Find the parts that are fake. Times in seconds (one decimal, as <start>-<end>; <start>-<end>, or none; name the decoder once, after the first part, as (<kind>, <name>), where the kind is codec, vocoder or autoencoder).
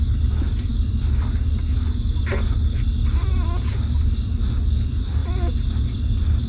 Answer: none